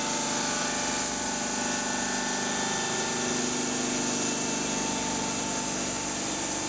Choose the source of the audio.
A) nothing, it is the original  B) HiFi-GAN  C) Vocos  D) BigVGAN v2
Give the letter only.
A